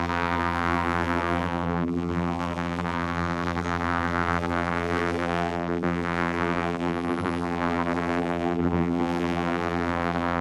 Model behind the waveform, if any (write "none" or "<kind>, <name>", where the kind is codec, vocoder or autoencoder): vocoder, BigVGAN v2